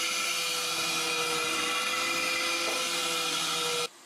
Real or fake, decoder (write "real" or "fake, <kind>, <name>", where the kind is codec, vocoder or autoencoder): real